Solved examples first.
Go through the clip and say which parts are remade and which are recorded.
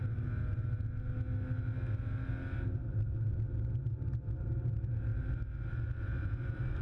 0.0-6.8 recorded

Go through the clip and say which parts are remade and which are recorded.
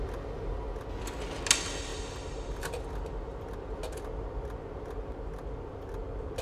0.0-6.4 recorded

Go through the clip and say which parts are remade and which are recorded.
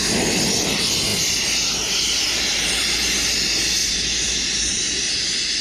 0.0-5.6 recorded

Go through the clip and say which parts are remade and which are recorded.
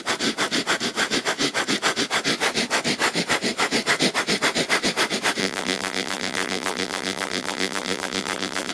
0.0-5.4 recorded; 5.4-8.7 remade